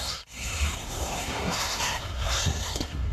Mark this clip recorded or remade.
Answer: remade